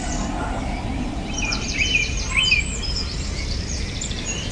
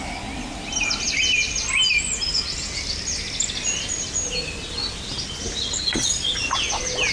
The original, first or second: second